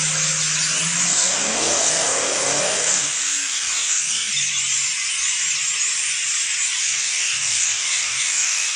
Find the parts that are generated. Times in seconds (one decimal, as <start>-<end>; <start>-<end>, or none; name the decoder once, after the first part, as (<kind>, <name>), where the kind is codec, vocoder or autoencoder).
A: 1.1-4.3 (codec, DAC); 6.8-8.8